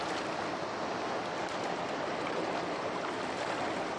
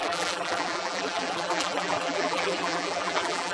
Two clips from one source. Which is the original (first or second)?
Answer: first